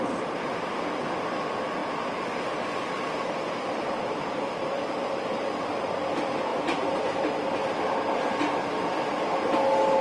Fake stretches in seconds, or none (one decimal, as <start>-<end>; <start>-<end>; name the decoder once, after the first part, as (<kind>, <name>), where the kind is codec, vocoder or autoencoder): none